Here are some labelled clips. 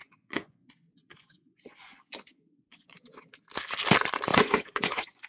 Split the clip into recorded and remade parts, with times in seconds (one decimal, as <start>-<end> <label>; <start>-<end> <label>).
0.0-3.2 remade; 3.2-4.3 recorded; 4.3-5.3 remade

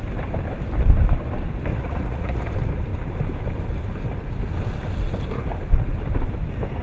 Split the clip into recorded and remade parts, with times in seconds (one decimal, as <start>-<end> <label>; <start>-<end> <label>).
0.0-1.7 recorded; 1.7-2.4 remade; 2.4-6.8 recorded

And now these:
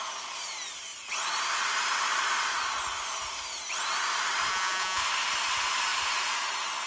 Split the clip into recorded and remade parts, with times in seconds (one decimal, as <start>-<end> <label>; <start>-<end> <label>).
0.0-4.5 recorded; 4.5-5.0 remade; 5.0-6.9 recorded